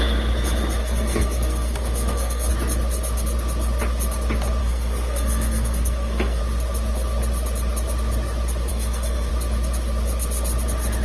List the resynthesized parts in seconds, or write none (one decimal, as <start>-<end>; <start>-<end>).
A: 0.8-2.5; 4.6-6.4; 8.7-9.3